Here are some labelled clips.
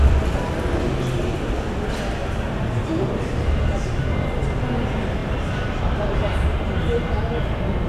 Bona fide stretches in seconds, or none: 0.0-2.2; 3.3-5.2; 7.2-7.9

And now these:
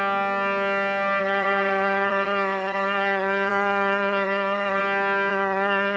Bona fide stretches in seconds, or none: 0.0-1.2; 4.8-5.3

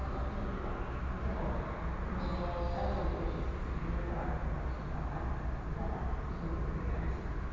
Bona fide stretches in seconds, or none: 0.0-7.5

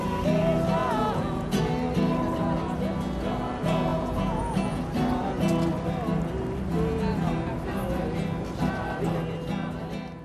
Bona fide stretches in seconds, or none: 0.0-0.8; 1.6-3.9; 4.8-10.2